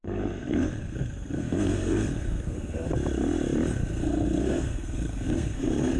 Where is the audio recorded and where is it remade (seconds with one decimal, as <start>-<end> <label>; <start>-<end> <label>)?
0.0-2.9 remade; 2.9-3.9 recorded; 3.9-6.0 remade